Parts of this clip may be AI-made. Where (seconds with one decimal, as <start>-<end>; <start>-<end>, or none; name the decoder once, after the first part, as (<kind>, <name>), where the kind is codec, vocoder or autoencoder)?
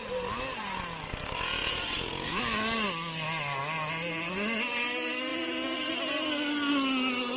1.6-2.4 (vocoder, Vocos); 5.3-5.9